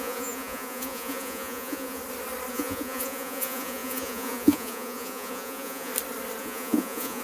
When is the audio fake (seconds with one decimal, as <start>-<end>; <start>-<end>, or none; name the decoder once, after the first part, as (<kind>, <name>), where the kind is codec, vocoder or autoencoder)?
0.0-2.0 (vocoder, Vocos); 2.5-5.9; 6.4-7.2